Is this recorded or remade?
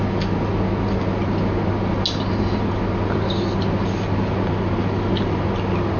recorded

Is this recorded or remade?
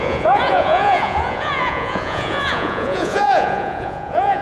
remade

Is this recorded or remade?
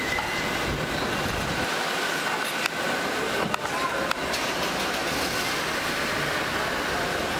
recorded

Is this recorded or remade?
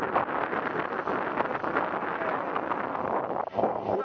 recorded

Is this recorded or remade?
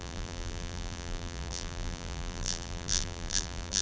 remade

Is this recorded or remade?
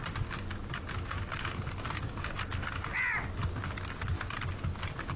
recorded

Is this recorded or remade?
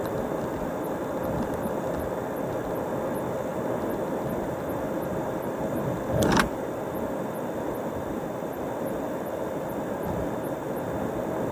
recorded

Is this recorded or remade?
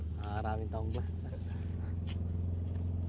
recorded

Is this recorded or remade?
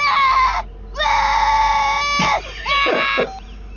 recorded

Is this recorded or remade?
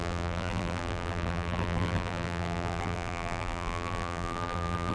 remade